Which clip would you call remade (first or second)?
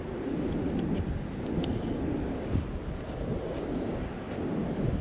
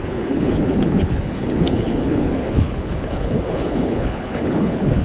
second